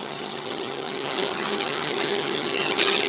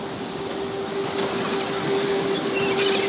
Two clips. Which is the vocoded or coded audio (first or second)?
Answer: first